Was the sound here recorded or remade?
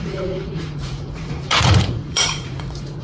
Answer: remade